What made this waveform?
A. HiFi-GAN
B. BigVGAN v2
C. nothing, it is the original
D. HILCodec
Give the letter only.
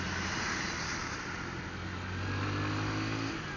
C